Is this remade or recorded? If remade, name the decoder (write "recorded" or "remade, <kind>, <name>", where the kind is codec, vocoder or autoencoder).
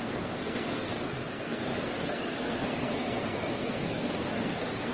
remade, codec, SNAC